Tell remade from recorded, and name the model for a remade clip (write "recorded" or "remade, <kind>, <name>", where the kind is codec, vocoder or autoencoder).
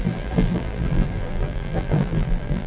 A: remade, vocoder, BigVGAN v2